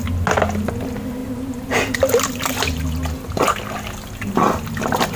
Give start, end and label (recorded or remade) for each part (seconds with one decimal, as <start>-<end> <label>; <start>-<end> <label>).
0.0-5.2 recorded